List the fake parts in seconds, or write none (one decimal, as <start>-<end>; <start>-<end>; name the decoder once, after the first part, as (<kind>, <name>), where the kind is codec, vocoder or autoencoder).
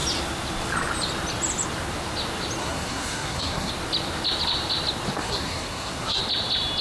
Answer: 2.6-3.7 (codec, SNAC); 5.2-6.2